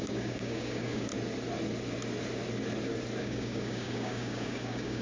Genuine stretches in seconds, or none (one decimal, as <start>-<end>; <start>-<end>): 1.1-3.2